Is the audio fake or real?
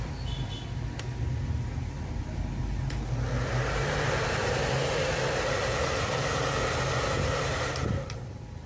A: real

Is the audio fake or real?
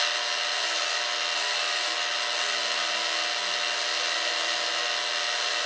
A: real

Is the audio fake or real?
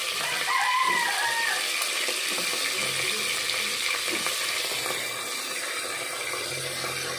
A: real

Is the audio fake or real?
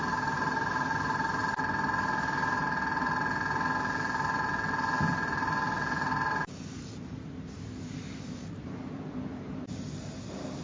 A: real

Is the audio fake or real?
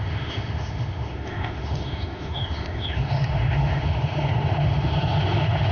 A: fake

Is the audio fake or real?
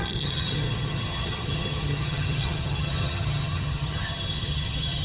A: fake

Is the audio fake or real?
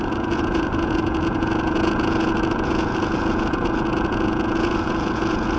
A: fake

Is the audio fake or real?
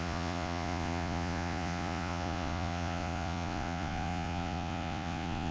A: fake